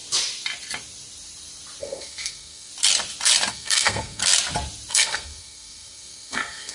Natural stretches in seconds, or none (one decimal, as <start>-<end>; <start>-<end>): 0.0-1.8; 2.7-3.5; 4.2-4.9